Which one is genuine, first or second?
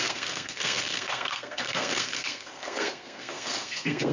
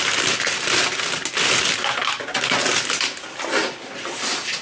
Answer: second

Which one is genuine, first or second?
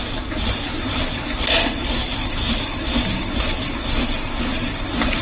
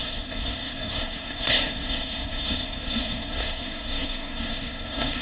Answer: first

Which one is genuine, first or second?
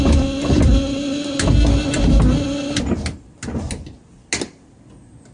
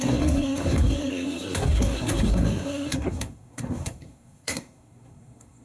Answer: first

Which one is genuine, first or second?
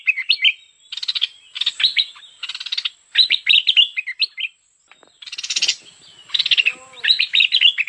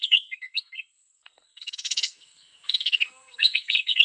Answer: first